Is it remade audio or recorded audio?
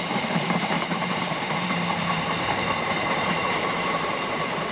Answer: remade